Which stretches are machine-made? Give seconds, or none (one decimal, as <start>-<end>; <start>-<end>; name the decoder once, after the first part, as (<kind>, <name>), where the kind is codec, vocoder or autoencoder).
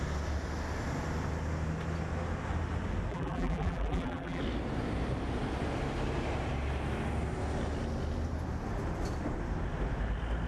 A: 3.1-4.4 (vocoder, BigVGAN v2)